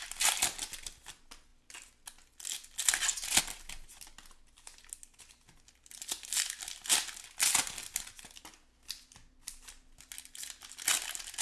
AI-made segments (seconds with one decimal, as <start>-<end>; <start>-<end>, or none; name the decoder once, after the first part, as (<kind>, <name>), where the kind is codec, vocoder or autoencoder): none

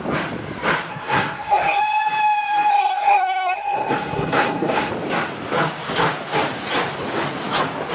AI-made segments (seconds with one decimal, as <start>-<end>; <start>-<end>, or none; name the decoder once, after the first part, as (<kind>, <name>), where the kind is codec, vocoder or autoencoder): 0.9-1.8 (codec, SNAC); 2.7-4.9